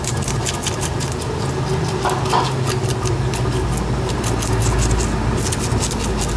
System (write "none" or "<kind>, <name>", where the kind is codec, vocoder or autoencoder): none